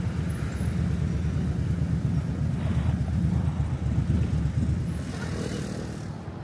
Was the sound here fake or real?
real